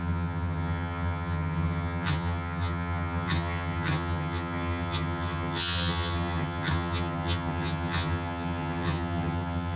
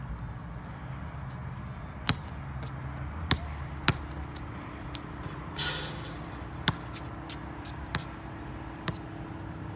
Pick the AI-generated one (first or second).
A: first